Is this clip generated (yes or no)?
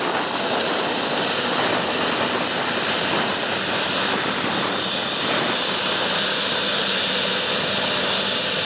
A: no